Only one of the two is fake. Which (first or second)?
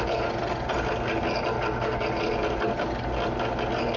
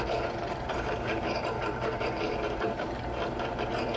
second